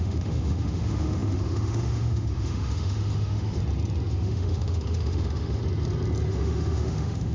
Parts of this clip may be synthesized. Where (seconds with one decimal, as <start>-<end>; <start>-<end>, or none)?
0.0-3.6; 4.1-5.6; 6.3-7.3